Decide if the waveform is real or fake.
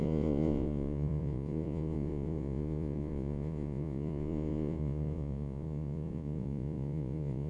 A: fake